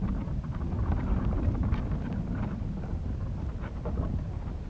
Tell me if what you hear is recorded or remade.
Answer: recorded